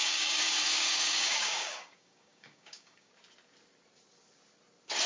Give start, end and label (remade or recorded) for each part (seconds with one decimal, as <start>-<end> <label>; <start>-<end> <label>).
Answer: 0.0-3.1 remade; 3.1-5.1 recorded